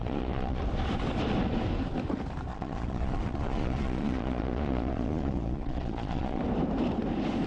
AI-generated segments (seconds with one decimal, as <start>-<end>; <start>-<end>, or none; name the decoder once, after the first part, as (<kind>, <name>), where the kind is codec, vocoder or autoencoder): 0.0-0.6 (vocoder, Vocos); 2.5-6.4